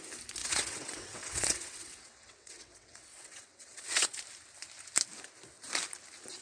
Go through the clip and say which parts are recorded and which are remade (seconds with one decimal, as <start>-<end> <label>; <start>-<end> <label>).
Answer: 0.0-0.4 recorded; 0.4-4.2 remade; 4.2-6.4 recorded